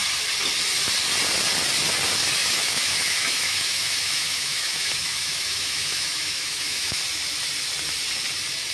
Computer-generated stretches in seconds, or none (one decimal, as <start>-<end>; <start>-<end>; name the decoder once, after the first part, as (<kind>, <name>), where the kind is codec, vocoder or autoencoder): 2.4-7.0 (autoencoder, DAC-VAE)